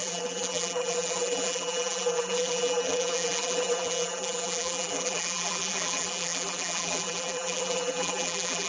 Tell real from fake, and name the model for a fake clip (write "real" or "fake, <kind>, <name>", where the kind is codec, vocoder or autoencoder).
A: fake, vocoder, BigVGAN v2